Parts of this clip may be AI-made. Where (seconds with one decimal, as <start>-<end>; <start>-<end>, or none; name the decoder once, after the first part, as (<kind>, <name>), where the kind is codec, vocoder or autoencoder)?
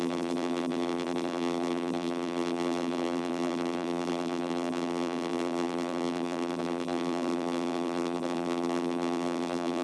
0.0-9.8 (vocoder, BigVGAN v2)